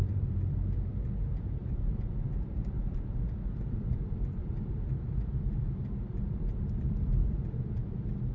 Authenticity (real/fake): fake